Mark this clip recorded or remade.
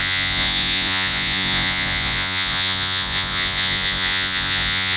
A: remade